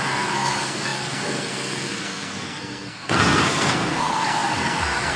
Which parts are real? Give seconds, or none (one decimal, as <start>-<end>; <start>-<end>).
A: none